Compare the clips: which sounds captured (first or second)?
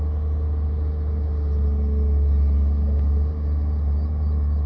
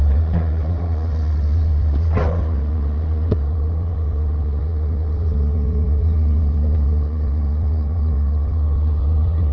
first